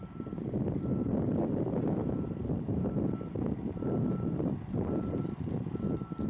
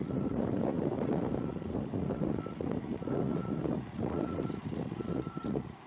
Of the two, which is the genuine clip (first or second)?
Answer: first